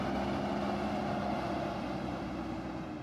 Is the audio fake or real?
fake